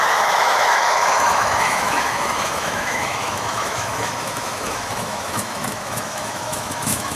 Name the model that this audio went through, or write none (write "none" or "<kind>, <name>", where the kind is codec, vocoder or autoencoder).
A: autoencoder, DAC-VAE